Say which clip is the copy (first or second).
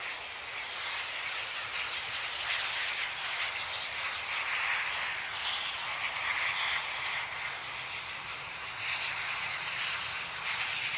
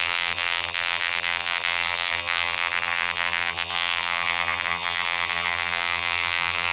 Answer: second